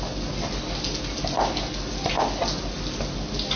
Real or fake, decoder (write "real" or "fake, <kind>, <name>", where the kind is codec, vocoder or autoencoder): real